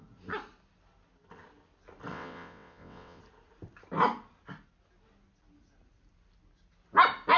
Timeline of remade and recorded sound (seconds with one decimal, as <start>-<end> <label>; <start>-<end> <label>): 0.0-2.1 recorded; 2.1-3.2 remade; 3.2-7.4 recorded